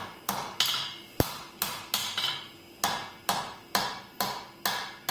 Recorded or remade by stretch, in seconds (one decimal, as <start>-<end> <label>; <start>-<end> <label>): 0.0-5.1 recorded